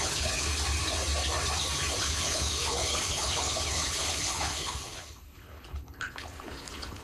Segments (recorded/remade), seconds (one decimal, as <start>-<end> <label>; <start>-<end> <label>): 0.0-0.5 remade; 0.5-2.0 recorded; 2.0-7.0 remade